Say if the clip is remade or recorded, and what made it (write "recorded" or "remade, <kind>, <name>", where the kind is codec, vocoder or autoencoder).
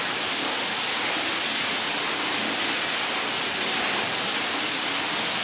recorded